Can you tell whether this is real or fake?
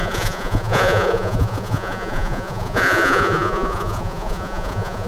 fake